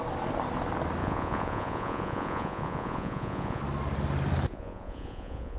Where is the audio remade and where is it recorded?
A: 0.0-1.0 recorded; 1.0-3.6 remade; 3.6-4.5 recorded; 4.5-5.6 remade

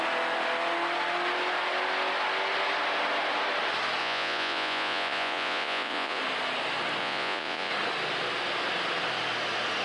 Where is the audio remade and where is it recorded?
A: 0.0-4.0 recorded; 4.0-6.2 remade; 6.2-7.0 recorded; 7.0-7.7 remade; 7.7-9.8 recorded

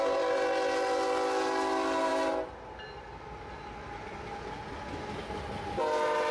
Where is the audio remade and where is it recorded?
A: 0.0-6.3 recorded

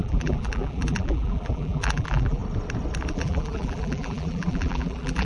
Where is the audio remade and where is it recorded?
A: 0.0-2.4 remade; 2.4-3.1 recorded; 3.1-5.3 remade

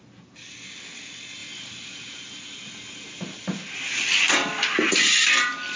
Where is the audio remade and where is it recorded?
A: 0.0-5.8 recorded